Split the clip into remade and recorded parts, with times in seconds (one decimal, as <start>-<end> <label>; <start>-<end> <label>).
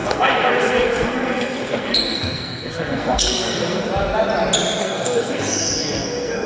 0.0-3.9 remade; 3.9-4.8 recorded; 4.8-6.5 remade